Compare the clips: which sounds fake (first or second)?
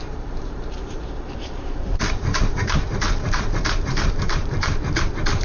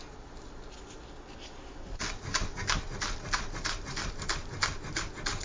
first